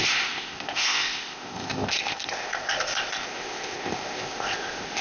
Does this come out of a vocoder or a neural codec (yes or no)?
yes